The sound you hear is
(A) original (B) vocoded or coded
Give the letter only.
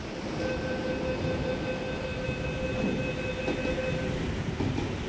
A